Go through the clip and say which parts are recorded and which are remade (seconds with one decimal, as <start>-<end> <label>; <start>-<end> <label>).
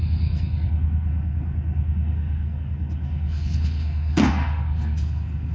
0.0-5.5 remade